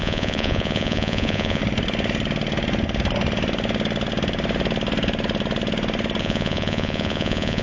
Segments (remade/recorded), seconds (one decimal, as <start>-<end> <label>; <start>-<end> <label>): 0.0-1.6 remade; 1.6-6.2 recorded; 6.2-7.6 remade